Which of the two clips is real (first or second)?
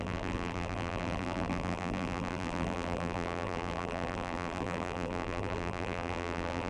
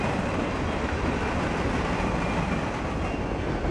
second